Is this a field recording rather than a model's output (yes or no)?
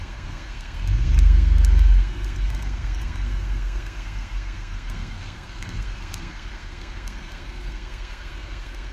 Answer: no